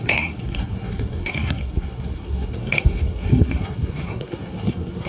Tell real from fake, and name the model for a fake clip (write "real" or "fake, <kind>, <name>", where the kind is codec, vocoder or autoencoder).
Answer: fake, codec, SNAC